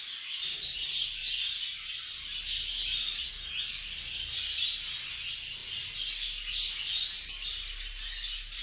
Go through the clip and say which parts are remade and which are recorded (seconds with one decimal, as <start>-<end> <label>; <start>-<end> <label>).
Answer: 0.0-8.6 recorded